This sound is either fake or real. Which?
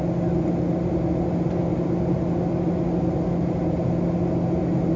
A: real